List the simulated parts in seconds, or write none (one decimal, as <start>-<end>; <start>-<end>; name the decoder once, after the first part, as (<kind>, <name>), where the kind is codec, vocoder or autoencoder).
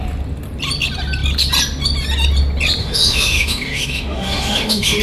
2.8-5.0 (autoencoder, DAC-VAE)